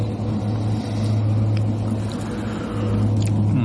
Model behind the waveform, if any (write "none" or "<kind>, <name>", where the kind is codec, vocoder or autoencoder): none